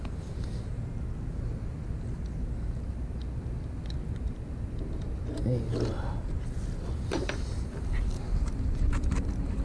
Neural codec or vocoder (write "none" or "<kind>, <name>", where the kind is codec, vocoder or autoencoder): none